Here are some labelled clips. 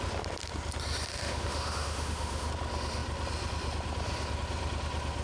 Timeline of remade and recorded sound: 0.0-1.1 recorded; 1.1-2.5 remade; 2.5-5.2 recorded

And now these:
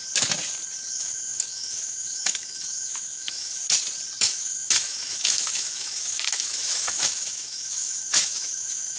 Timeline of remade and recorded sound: 0.0-0.9 recorded; 0.9-3.6 remade; 3.6-4.2 recorded; 4.2-9.0 remade

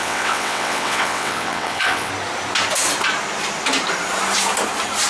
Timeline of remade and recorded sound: 0.0-2.1 remade; 2.1-5.1 recorded

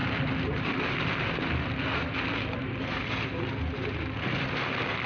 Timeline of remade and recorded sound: 0.0-5.1 recorded

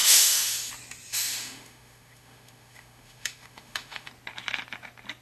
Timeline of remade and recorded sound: 0.0-0.7 remade; 0.7-1.1 recorded; 1.1-4.1 remade; 4.1-5.2 recorded

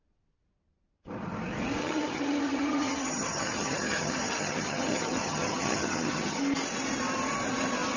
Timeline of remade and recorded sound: 0.0-1.8 recorded; 1.8-6.4 remade; 6.4-8.0 recorded

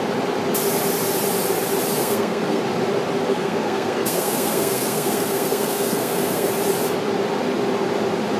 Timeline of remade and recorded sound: 0.0-2.0 recorded; 2.0-2.6 remade; 2.6-3.3 recorded; 3.3-6.5 remade; 6.5-8.4 recorded